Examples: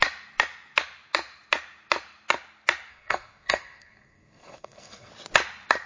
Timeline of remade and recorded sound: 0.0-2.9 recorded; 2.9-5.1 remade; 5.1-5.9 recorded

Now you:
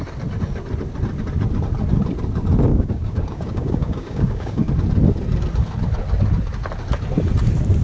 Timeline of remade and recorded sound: 0.0-2.7 recorded; 2.7-4.7 remade; 4.7-7.8 recorded

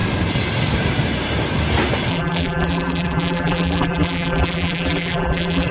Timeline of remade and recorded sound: 0.0-2.1 recorded; 2.1-5.7 remade